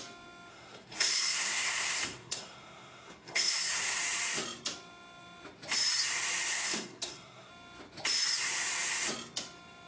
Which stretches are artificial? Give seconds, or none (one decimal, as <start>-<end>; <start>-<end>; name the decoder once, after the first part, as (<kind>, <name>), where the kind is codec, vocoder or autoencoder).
0.5-4.0 (codec, SNAC); 6.5-7.5